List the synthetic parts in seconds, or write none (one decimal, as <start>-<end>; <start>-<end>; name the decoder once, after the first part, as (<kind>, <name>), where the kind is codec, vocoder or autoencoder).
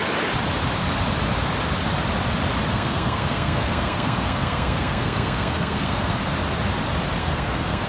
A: 2.7-6.2 (codec, SNAC); 7.2-7.9